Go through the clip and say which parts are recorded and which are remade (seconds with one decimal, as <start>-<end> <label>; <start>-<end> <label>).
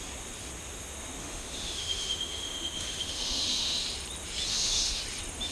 0.0-1.2 recorded; 1.2-3.8 remade; 3.8-4.5 recorded; 4.5-5.0 remade; 5.0-5.5 recorded